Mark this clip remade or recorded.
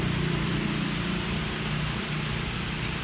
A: remade